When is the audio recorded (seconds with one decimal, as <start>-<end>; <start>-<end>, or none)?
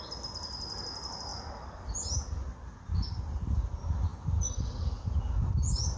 0.0-6.0